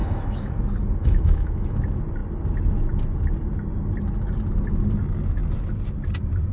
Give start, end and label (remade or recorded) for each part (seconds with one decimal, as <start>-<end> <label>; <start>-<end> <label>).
0.0-0.6 remade; 0.6-1.0 recorded; 1.0-1.8 remade; 1.8-6.5 recorded